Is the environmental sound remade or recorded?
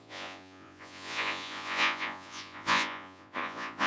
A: remade